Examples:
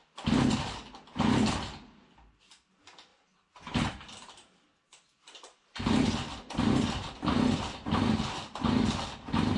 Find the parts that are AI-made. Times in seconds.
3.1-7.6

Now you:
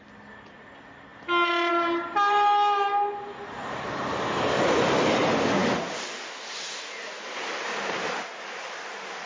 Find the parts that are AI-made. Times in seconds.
none